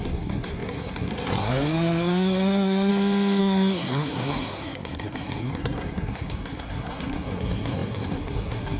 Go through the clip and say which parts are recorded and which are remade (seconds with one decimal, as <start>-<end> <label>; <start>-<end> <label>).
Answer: 0.0-2.9 remade; 2.9-3.4 recorded; 3.4-8.8 remade